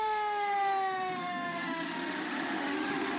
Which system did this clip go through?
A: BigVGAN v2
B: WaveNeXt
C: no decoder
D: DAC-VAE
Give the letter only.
D